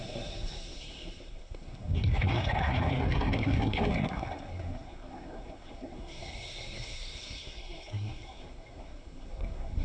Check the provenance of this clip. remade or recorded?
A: remade